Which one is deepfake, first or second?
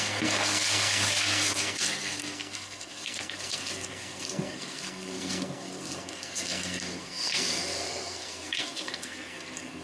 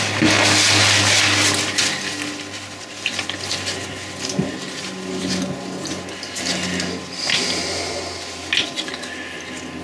first